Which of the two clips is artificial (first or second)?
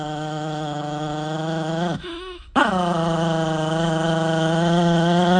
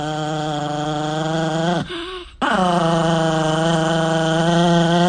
first